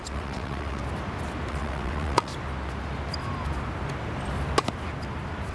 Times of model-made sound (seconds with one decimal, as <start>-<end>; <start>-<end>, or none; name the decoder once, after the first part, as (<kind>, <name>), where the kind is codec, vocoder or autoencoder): 0.0-0.8 (vocoder, WaveNeXt); 1.5-2.3